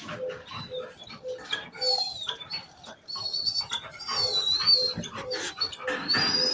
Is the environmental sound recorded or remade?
recorded